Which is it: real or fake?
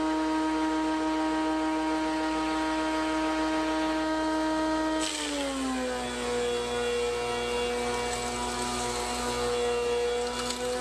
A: real